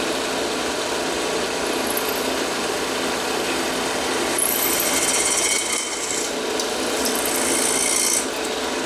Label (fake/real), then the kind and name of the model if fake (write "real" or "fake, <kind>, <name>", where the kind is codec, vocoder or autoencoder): real